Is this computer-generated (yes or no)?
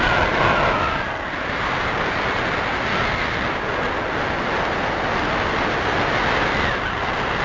no